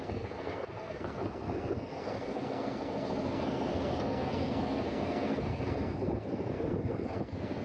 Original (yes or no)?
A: no